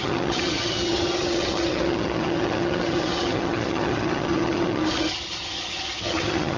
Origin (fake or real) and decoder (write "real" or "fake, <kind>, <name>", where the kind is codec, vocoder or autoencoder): fake, vocoder, HiFi-GAN